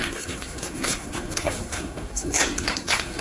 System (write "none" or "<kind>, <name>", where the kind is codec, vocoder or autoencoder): codec, SNAC